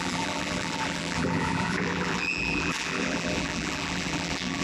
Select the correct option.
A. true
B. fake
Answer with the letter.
B